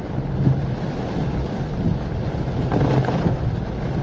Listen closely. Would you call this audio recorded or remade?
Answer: recorded